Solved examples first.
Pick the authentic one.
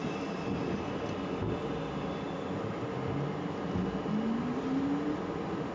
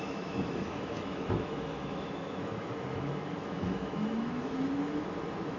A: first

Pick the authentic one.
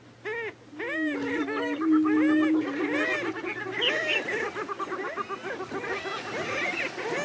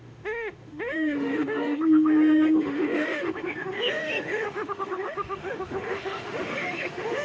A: first